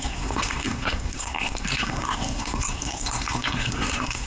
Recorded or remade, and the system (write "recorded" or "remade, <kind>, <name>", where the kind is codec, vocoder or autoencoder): remade, codec, SNAC